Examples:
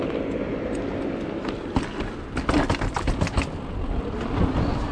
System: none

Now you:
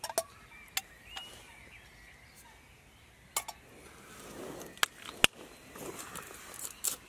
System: none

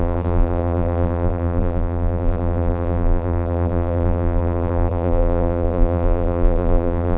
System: vocoder, BigVGAN v2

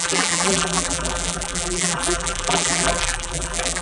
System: vocoder, BigVGAN v2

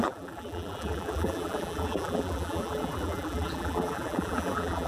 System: vocoder, BigVGAN v2